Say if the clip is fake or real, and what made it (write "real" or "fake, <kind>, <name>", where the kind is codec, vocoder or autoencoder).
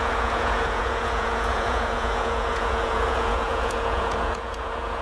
fake, vocoder, Vocos